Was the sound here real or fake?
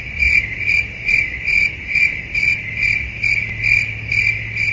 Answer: real